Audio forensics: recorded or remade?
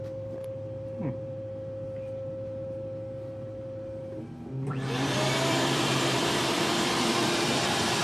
remade